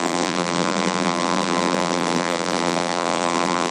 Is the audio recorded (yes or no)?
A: no